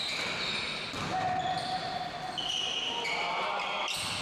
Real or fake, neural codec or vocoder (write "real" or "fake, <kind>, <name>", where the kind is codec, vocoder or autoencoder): real